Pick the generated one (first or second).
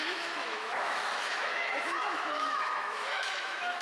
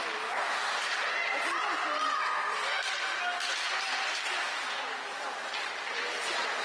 first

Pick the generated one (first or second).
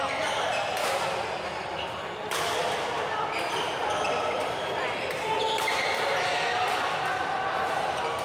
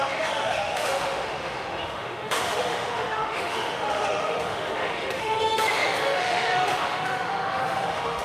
second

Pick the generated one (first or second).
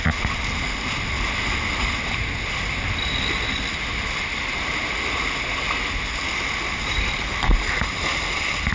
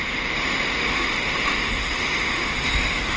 second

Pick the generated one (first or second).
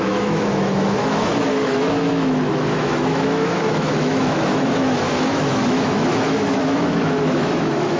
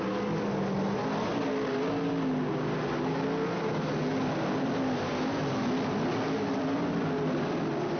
first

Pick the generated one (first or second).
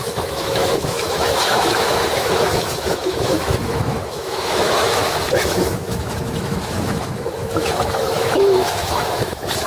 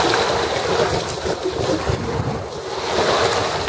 first